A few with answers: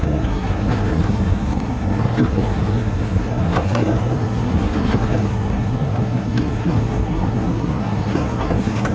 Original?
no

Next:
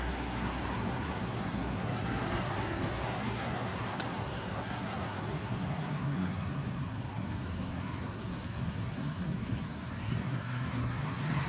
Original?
no